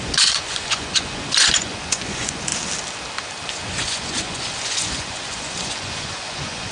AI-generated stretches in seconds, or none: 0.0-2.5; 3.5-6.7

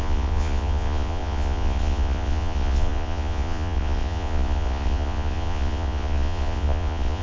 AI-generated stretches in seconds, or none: 0.0-7.2

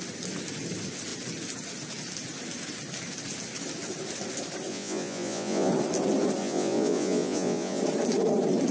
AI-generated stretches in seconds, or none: 4.7-5.7; 6.4-7.8

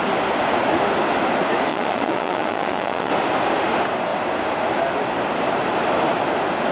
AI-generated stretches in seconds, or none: 1.7-3.1

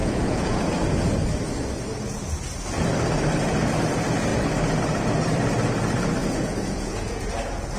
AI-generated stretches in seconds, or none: 0.0-0.6; 6.2-7.3